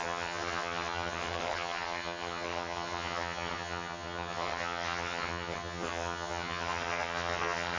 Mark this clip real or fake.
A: fake